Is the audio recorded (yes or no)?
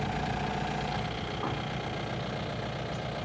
yes